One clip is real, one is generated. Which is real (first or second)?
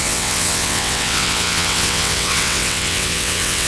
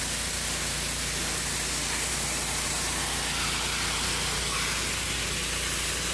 second